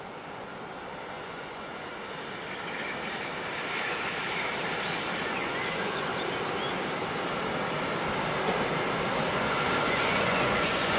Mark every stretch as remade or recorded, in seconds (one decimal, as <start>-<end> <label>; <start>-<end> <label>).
0.0-0.5 remade; 0.5-1.0 recorded; 1.0-1.9 remade; 1.9-5.2 recorded; 5.2-6.1 remade; 6.1-9.3 recorded; 9.3-11.0 remade